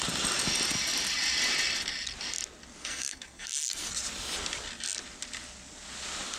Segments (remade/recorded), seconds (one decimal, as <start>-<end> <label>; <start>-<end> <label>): 0.0-2.8 recorded; 2.8-3.9 remade; 3.9-6.4 recorded